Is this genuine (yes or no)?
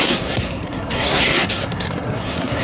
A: no